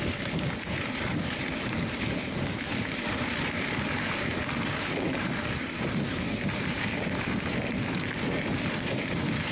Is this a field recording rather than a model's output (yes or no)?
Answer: no